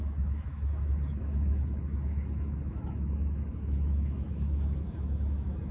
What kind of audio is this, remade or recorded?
remade